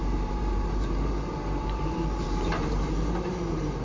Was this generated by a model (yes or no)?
yes